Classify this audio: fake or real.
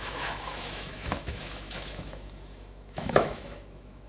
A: fake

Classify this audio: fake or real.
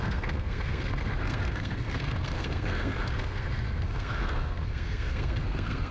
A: fake